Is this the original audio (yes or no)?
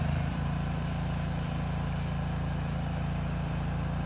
no